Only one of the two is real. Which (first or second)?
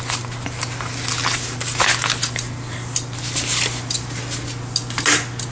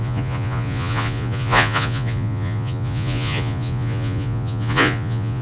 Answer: first